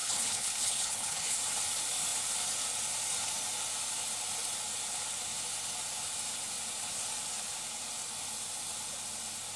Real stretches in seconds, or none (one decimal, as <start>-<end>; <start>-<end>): 1.4-9.6